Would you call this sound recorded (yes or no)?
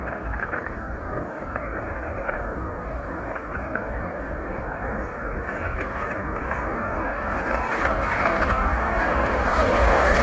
no